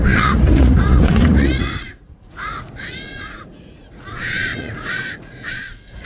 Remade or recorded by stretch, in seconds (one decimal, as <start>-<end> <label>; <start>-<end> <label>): 0.0-6.1 remade